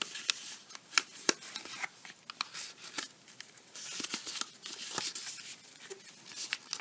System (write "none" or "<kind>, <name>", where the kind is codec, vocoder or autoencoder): none